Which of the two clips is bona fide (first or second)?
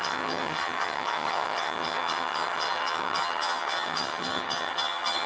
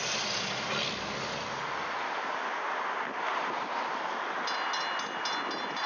second